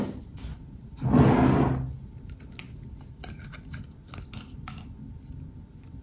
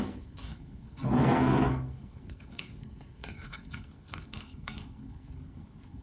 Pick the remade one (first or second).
second